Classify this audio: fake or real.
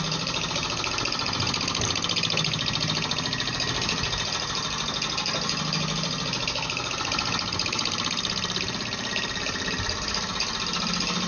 real